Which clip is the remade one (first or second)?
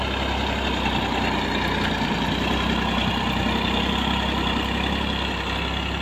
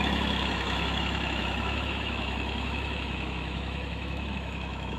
second